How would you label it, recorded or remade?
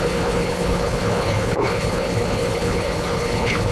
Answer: remade